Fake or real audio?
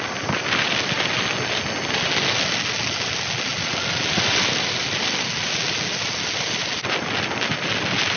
real